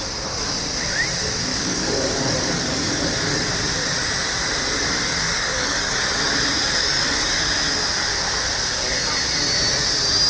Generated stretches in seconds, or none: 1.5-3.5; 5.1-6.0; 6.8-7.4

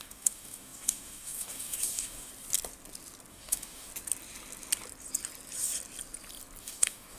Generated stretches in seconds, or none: 0.0-2.3; 3.3-3.9; 6.6-7.2